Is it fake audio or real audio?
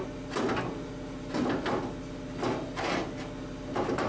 real